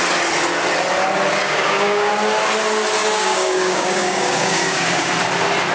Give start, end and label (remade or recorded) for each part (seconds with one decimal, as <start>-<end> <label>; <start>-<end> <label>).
0.0-1.4 recorded; 1.4-2.1 remade; 2.1-3.0 recorded; 3.0-5.1 remade; 5.1-5.7 recorded